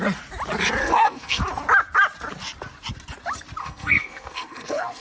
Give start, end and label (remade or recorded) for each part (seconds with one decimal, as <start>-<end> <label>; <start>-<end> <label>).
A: 0.0-0.8 recorded; 0.8-1.4 remade; 1.4-3.6 recorded; 3.6-5.0 remade